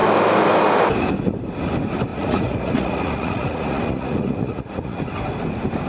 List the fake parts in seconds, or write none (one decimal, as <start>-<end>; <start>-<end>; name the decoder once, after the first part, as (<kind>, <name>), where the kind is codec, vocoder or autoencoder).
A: 2.1-5.0 (vocoder, Vocos)